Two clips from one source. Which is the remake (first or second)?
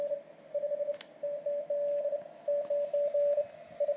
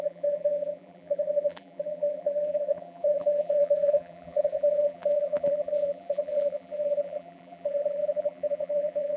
second